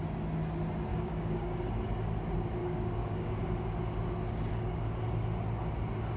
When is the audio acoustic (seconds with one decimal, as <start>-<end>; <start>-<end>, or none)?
0.0-0.9; 1.7-2.6; 3.4-4.5; 5.0-6.2